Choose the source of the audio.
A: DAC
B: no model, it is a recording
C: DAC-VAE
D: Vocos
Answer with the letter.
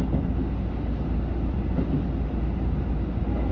B